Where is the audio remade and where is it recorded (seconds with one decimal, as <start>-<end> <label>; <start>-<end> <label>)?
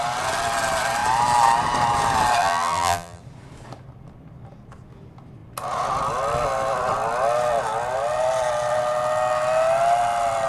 0.0-2.4 recorded; 2.4-3.2 remade; 3.2-10.5 recorded